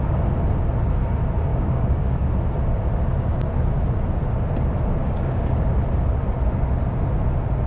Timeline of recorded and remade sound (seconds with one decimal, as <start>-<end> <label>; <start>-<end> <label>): 0.0-1.5 recorded; 1.5-2.3 remade; 2.3-5.0 recorded; 5.0-5.7 remade; 5.7-7.7 recorded